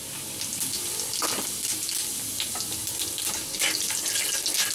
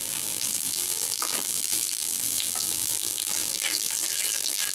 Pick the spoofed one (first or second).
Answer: second